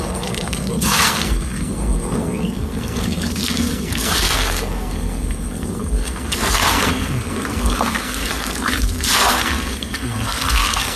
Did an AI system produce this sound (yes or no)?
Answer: yes